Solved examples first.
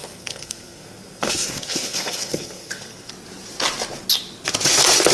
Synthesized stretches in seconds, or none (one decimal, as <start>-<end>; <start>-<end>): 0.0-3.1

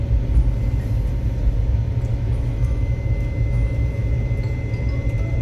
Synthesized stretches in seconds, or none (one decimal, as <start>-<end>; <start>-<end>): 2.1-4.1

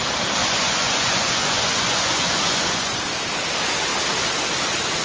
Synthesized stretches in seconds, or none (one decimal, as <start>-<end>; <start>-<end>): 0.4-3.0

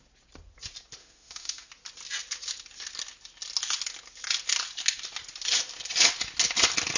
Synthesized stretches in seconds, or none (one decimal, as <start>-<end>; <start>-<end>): 1.0-1.7

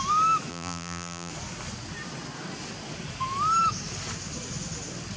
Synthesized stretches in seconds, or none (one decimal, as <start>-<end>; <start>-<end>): 0.5-1.3

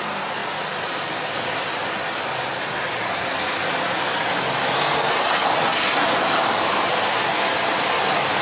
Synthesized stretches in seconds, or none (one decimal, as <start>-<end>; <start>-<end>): none